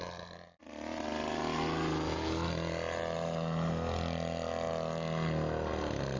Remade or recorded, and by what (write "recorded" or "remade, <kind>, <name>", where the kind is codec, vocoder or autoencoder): recorded